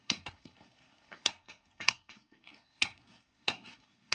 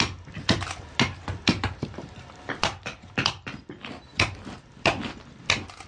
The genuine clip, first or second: second